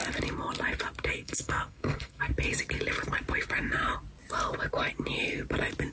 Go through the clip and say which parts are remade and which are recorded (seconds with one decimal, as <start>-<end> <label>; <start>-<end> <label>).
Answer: 0.0-1.1 recorded; 1.1-2.3 remade; 2.3-5.9 recorded